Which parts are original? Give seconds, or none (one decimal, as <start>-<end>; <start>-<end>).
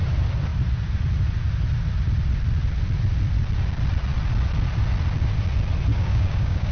0.0-5.9